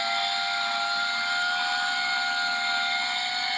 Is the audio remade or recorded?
recorded